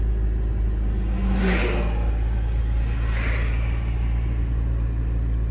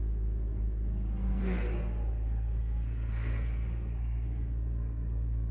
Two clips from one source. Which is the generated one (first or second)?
second